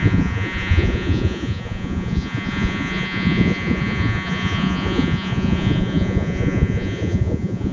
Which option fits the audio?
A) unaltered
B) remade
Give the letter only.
B